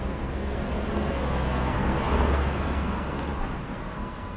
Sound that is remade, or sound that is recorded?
remade